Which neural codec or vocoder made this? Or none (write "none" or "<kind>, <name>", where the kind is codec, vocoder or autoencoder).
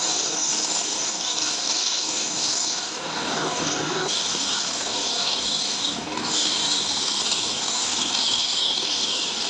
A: codec, DAC